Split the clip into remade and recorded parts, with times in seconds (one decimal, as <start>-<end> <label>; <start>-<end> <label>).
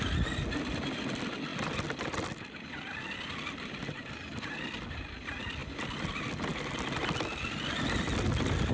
0.0-1.5 recorded; 1.5-4.4 remade; 4.4-5.6 recorded; 5.6-6.1 remade; 6.1-8.7 recorded